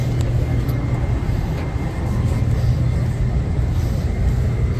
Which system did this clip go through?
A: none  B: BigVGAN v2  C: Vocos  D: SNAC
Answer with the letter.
A